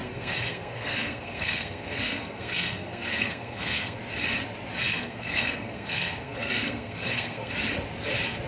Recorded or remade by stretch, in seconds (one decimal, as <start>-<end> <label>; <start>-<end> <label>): 0.0-4.0 remade; 4.0-4.9 recorded; 4.9-7.5 remade; 7.5-8.5 recorded